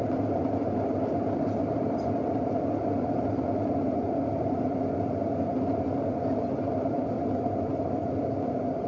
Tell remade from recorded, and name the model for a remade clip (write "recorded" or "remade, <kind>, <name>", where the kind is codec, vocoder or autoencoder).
recorded